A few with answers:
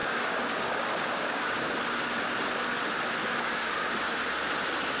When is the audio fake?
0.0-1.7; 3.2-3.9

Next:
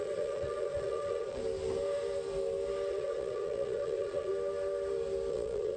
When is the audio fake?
0.0-1.4; 2.9-4.3; 5.3-5.8

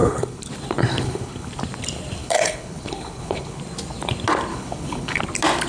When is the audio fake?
0.0-0.5; 0.9-1.5; 2.2-3.6; 4.5-5.2

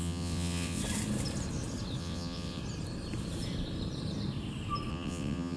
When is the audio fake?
0.0-0.8; 2.0-2.6; 4.9-5.6

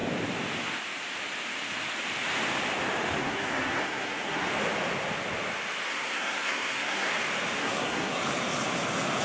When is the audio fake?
3.2-4.5; 5.9-7.1; 7.6-8.2

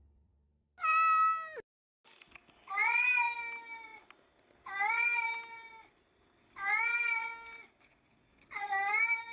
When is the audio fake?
none

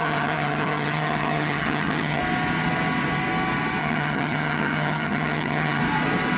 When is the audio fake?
0.0-2.2; 3.8-5.8

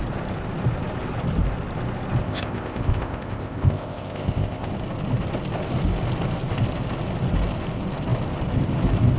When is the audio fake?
2.2-4.7